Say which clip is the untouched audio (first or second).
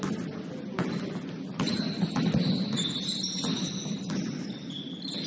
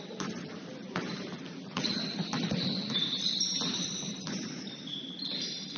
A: first